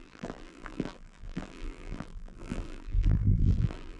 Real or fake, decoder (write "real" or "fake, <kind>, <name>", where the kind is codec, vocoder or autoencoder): fake, vocoder, BigVGAN v2